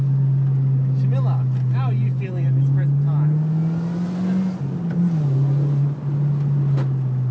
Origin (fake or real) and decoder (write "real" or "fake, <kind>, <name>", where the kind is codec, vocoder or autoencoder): real